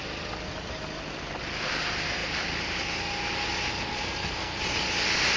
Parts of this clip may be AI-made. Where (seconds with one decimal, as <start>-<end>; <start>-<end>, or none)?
3.9-4.6